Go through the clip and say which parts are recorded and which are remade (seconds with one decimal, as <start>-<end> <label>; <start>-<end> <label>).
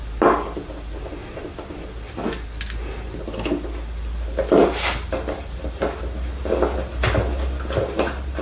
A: 0.0-4.6 recorded; 4.6-6.4 remade; 6.4-8.4 recorded